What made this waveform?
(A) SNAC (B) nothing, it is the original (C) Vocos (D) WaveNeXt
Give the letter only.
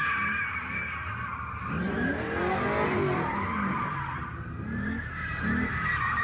B